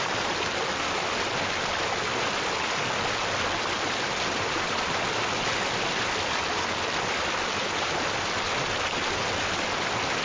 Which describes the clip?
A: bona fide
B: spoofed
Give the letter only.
A